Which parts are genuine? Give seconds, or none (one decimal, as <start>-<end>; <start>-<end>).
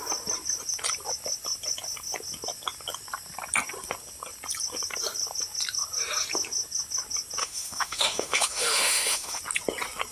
0.0-7.4; 9.4-10.1